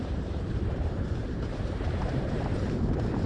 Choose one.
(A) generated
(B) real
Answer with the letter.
A